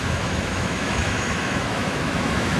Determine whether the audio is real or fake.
fake